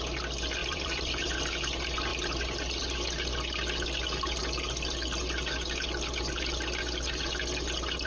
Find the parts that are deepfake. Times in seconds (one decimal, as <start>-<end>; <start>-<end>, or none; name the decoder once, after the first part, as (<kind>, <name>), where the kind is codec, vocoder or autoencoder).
0.6-1.3 (vocoder, BigVGAN v2); 2.1-2.9

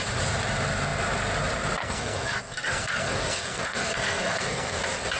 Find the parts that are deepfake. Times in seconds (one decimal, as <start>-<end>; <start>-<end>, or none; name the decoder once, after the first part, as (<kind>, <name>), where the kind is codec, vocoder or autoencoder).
1.8-4.8 (codec, SNAC)